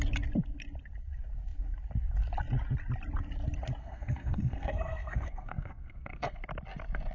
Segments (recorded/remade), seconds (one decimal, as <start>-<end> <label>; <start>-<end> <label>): 0.0-3.8 recorded; 3.8-6.4 remade; 6.4-7.1 recorded